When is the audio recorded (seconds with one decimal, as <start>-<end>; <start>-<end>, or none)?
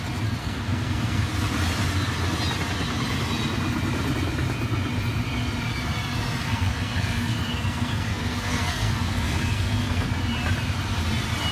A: 0.0-0.4; 1.3-6.4; 10.1-11.5